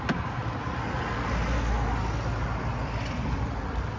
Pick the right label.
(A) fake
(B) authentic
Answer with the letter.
B